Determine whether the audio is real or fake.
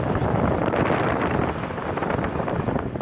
real